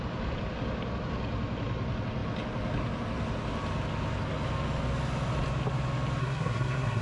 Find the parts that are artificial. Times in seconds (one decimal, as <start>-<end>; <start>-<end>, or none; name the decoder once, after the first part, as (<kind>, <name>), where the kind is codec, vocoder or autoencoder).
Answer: 6.2-7.0 (codec, SNAC)